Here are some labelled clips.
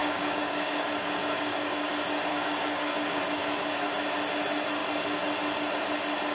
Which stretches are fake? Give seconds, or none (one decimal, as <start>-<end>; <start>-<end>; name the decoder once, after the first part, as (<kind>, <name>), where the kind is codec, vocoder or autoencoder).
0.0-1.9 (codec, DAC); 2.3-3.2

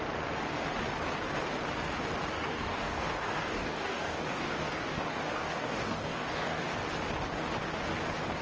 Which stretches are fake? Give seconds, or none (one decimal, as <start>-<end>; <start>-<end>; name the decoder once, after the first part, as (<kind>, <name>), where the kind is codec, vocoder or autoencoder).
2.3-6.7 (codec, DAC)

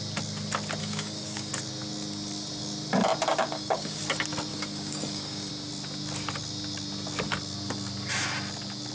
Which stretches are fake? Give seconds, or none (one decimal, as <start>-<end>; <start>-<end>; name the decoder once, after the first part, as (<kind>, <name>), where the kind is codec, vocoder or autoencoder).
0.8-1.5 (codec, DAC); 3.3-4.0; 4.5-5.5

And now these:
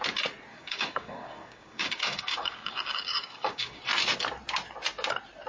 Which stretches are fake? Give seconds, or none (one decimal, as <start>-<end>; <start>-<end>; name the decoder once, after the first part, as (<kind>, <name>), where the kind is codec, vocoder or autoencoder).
0.5-3.8 (codec, DAC)

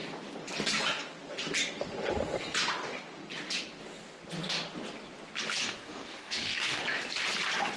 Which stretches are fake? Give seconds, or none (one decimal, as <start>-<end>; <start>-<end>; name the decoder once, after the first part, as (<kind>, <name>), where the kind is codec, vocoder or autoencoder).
5.6-6.8 (codec, DAC)